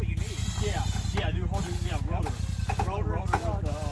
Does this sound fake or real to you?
real